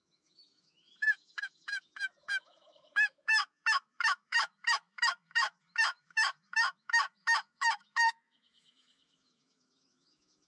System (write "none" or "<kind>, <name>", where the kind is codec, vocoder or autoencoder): autoencoder, DAC-VAE